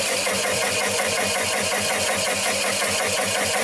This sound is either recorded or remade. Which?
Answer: remade